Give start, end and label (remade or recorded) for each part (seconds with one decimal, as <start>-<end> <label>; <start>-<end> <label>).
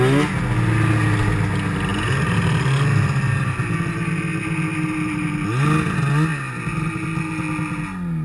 0.0-8.2 recorded